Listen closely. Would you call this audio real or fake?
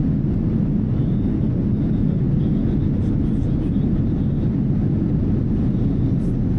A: real